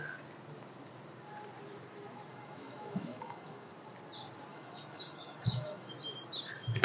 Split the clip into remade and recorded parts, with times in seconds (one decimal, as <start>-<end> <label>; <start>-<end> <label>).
0.0-2.3 recorded; 2.3-3.7 remade; 3.7-4.5 recorded; 4.5-5.9 remade; 5.9-6.8 recorded